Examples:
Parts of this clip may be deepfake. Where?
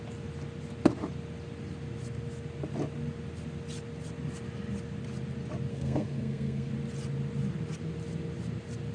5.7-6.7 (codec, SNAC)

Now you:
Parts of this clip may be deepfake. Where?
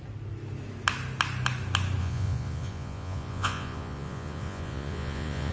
2.0-5.5 (vocoder, Vocos)